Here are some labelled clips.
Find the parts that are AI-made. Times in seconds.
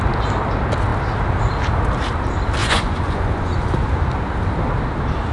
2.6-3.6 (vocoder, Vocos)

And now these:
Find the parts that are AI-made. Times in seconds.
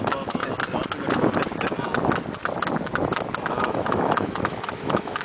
0.0-0.4 (autoencoder, DAC-VAE); 3.5-5.2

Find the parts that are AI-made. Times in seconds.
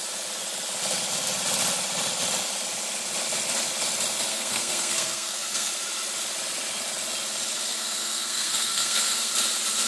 4.3-5.7 (codec, SNAC); 7.7-9.3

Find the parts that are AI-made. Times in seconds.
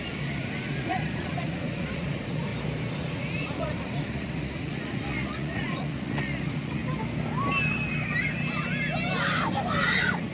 0.0-2.5 (vocoder, Vocos); 3.0-6.8; 9.8-10.3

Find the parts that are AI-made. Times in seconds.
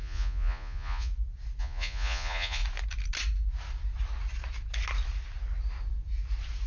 0.0-1.1 (vocoder, Vocos); 1.6-2.6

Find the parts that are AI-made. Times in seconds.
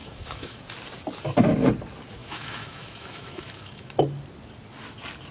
0.0-0.6 (autoencoder, DAC-VAE); 2.2-4.0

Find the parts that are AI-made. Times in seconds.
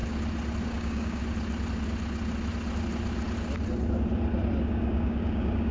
0.7-1.2 (codec, DAC); 4.6-5.7